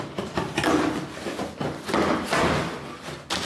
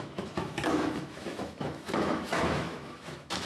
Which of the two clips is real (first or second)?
first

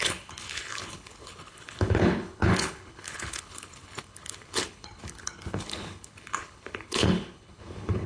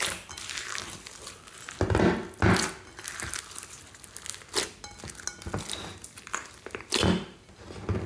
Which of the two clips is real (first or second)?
second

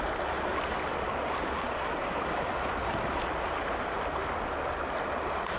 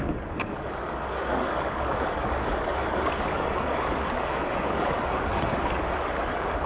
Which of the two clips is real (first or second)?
first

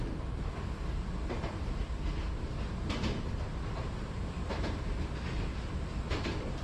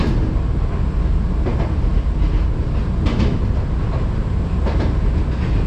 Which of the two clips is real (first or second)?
second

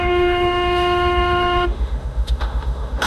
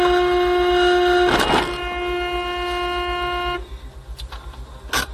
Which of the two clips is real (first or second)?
second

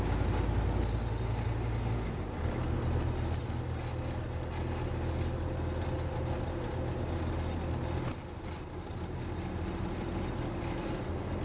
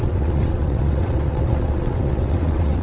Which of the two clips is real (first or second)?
first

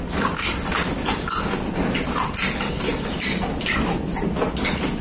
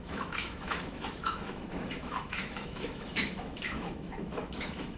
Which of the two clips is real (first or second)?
first